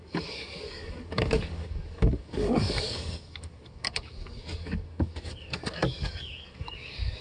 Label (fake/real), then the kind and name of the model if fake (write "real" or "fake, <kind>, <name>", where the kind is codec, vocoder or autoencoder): fake, codec, DAC